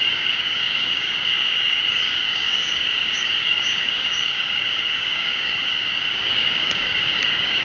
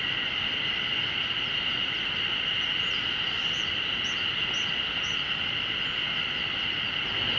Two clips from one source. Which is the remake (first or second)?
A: first